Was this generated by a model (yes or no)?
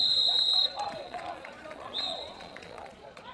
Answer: yes